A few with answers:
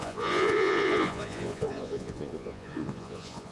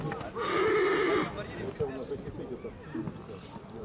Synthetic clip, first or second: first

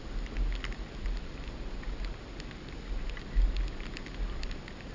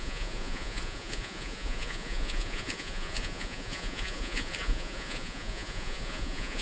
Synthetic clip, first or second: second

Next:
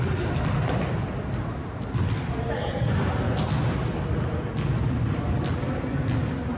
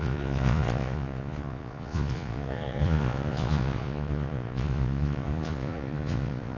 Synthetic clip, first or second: second